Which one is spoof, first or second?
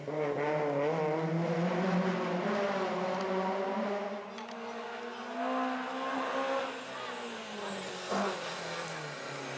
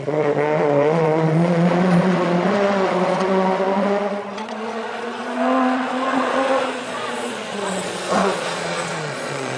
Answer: second